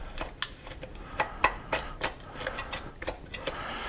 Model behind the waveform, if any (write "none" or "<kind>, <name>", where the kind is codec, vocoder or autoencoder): none